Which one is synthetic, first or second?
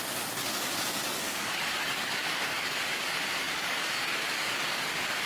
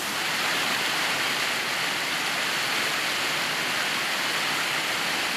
first